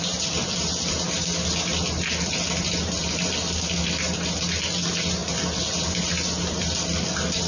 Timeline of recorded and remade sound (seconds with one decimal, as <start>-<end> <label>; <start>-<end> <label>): 0.0-7.5 recorded